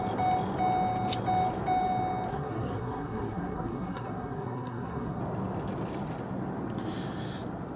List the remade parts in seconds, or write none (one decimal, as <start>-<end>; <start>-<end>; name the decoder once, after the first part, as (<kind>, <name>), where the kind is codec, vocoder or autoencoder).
2.3-5.2 (codec, SNAC)

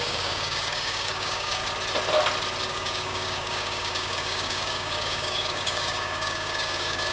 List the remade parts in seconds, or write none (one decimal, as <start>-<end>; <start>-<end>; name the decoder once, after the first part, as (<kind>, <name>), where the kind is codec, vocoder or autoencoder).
0.0-1.6 (codec, DAC); 2.7-7.1

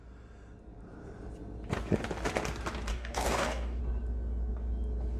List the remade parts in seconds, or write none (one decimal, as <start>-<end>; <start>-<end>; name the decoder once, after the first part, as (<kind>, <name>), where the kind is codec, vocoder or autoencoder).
2.9-3.8 (codec, DAC)

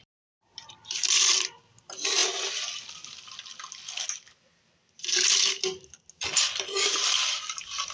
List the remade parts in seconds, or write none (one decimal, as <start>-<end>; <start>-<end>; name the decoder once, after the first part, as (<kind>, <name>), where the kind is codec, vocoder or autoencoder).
0.0-2.2 (vocoder, BigVGAN v2); 6.6-7.9

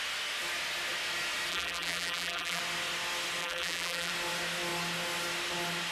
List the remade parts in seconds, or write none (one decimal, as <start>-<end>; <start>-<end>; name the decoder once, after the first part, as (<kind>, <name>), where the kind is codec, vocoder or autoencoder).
1.5-2.6 (vocoder, BigVGAN v2); 3.4-4.1

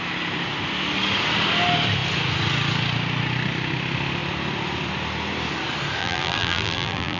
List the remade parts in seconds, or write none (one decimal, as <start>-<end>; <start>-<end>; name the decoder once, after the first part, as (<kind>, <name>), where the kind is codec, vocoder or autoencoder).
6.0-7.2 (vocoder, BigVGAN v2)